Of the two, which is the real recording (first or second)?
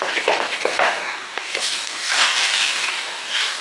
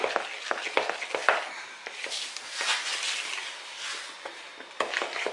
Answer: second